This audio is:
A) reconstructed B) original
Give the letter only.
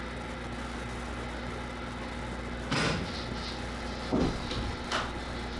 B